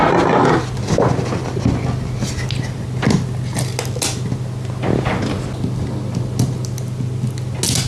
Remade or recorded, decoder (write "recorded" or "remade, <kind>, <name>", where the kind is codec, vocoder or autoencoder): recorded